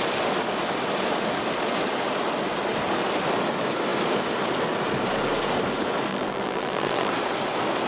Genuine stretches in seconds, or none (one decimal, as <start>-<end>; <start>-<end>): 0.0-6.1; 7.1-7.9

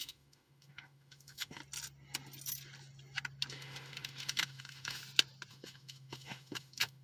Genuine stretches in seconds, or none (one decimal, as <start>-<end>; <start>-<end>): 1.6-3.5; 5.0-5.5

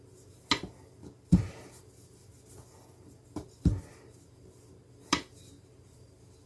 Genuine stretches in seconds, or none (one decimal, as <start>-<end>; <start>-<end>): 0.0-6.5

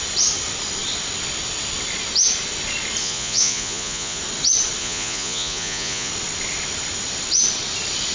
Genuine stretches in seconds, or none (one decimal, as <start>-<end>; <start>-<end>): 0.0-3.0; 4.2-4.8; 6.1-8.1